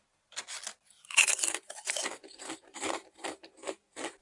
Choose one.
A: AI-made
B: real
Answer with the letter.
B